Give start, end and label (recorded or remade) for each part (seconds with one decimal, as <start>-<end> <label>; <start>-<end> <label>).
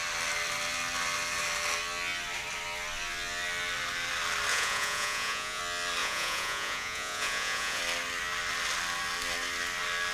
0.0-4.5 recorded; 4.5-5.6 remade; 5.6-6.0 recorded; 6.0-7.8 remade; 7.8-10.1 recorded